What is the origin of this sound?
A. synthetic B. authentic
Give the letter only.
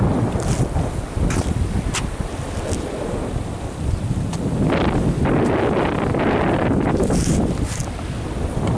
B